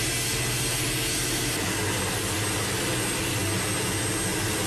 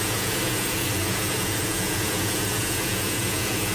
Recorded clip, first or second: first